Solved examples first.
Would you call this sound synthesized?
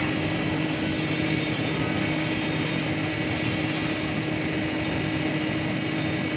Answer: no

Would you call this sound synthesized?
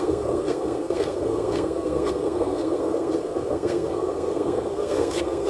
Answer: yes